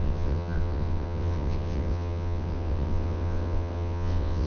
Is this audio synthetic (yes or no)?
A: yes